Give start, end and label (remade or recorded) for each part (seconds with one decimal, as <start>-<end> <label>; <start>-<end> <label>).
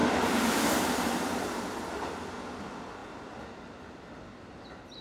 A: 0.0-0.7 remade; 0.7-5.0 recorded